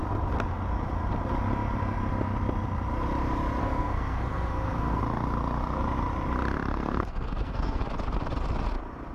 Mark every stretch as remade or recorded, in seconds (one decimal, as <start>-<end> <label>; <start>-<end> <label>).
0.0-3.6 recorded; 3.6-5.0 remade; 5.0-6.7 recorded; 6.7-7.8 remade; 7.8-9.1 recorded